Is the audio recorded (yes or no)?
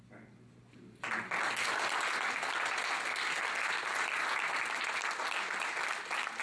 yes